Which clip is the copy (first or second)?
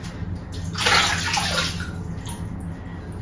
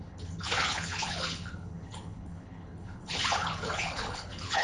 second